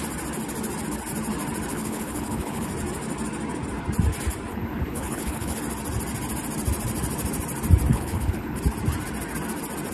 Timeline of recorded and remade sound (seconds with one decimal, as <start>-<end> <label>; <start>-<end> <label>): 0.0-1.7 recorded; 1.7-2.7 remade; 2.7-4.5 recorded; 4.5-5.6 remade; 5.6-7.9 recorded; 7.9-8.6 remade; 8.6-9.9 recorded